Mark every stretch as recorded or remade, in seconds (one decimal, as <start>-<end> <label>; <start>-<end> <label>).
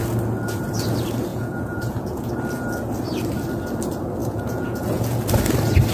0.0-1.3 recorded; 1.3-2.3 remade; 2.3-4.2 recorded; 4.2-5.2 remade; 5.2-5.9 recorded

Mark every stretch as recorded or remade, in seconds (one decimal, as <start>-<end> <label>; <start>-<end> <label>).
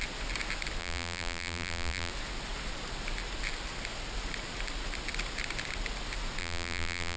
0.0-0.8 recorded; 0.8-2.1 remade; 2.1-6.4 recorded; 6.4-7.2 remade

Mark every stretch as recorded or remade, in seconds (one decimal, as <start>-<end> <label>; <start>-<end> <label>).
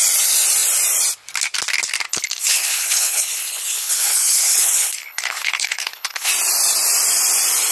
0.0-2.1 recorded; 2.1-6.3 remade; 6.3-7.7 recorded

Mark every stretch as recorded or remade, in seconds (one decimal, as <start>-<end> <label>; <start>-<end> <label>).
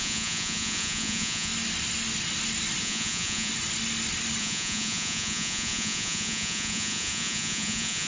0.0-1.5 remade; 1.5-2.8 recorded; 2.8-3.5 remade; 3.5-4.4 recorded; 4.4-8.1 remade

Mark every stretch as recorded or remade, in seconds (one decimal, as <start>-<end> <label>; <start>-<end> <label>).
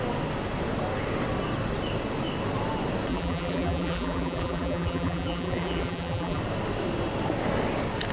0.0-3.1 recorded; 3.1-6.4 remade; 6.4-8.1 recorded